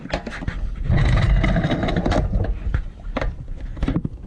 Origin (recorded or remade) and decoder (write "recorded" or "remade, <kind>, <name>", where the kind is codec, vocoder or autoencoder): recorded